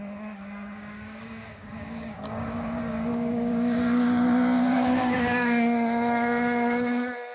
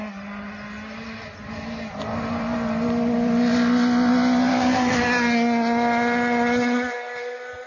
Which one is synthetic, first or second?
first